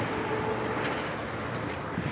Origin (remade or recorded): recorded